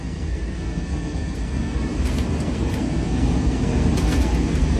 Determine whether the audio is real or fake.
fake